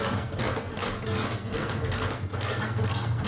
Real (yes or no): no